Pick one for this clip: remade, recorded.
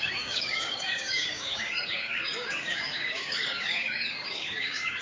remade